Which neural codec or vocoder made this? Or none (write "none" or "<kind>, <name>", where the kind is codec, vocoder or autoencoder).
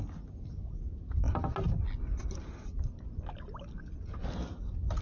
none